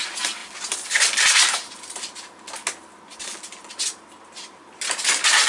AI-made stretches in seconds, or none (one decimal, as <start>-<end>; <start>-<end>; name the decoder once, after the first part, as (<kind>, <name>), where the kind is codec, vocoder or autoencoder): none